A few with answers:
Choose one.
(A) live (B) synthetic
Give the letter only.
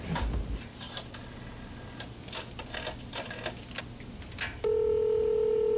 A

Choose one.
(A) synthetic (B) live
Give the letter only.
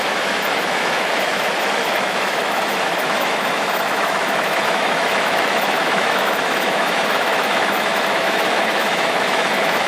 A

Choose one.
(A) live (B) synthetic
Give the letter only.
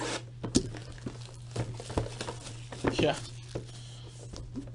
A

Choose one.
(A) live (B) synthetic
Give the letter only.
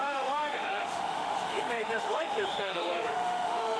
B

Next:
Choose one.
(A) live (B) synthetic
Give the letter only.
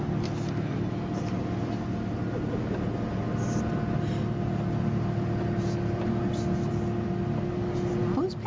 A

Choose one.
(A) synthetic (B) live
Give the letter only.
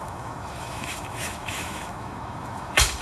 A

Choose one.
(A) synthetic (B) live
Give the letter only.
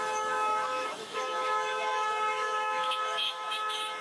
A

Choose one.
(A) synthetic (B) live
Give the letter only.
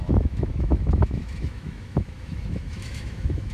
A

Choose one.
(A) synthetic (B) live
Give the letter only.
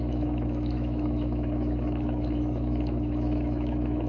A